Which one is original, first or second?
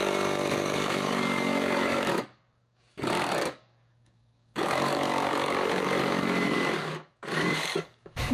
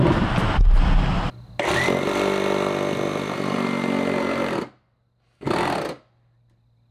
second